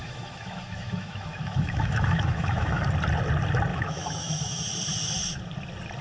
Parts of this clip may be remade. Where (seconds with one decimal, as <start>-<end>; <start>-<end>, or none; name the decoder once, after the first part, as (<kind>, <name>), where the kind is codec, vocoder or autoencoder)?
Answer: 0.0-2.8 (autoencoder, DAC-VAE); 3.7-4.6